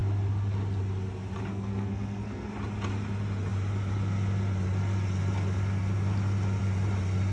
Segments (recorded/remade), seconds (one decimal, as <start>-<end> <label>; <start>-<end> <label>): 0.0-1.5 recorded; 1.5-2.5 remade; 2.5-7.3 recorded